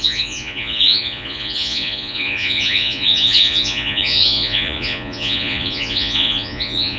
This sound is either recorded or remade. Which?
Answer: remade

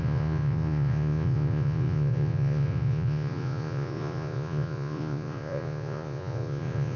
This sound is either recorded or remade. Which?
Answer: remade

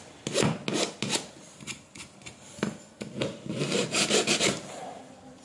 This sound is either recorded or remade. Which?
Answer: recorded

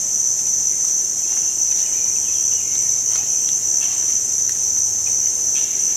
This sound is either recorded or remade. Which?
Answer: recorded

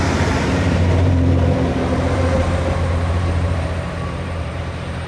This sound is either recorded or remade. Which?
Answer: remade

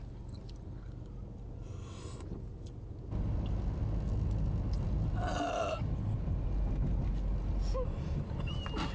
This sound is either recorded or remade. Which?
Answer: recorded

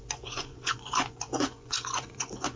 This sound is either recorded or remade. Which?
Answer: remade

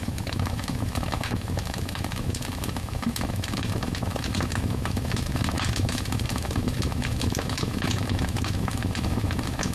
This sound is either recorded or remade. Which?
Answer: remade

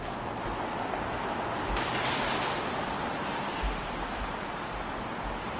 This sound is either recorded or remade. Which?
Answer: recorded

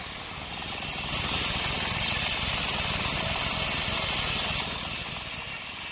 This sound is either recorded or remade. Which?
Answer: recorded